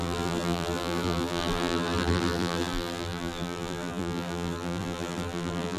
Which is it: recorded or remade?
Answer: remade